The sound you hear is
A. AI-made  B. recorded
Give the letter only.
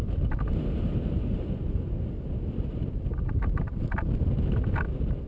B